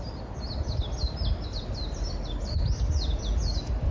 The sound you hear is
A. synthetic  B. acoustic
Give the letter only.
B